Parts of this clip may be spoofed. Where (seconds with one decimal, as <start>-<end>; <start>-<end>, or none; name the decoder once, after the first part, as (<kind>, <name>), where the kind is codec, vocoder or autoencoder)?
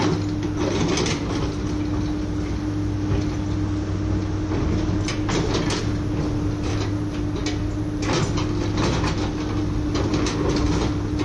none